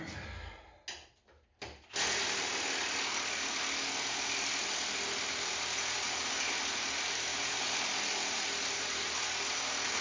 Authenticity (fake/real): real